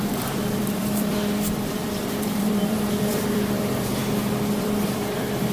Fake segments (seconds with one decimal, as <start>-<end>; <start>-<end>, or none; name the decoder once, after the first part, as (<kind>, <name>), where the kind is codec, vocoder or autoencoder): 0.0-4.0 (vocoder, BigVGAN v2); 4.6-5.5